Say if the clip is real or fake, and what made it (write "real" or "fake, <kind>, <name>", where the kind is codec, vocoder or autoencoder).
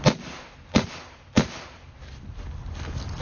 real